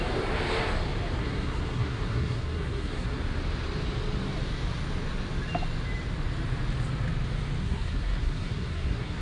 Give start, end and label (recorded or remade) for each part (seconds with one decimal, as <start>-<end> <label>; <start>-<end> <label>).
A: 0.0-1.2 recorded; 1.2-3.2 remade; 3.2-7.6 recorded; 7.6-9.2 remade